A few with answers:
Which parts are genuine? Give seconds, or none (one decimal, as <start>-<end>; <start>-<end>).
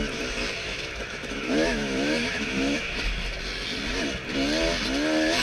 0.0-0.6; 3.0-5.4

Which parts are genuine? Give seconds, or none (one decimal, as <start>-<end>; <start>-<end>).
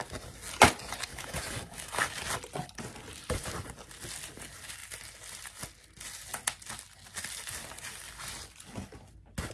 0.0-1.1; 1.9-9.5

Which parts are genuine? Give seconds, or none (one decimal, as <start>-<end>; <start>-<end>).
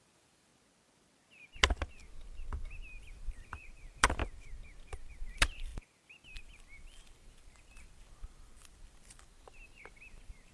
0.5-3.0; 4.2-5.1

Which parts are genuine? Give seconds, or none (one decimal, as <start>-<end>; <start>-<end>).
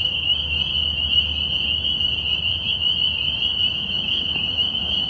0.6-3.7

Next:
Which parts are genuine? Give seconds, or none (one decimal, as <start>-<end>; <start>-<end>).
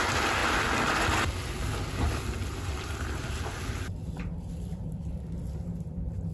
0.0-0.4; 1.2-6.3